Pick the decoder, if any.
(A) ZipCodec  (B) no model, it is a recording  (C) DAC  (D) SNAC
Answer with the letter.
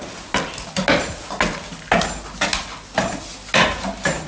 B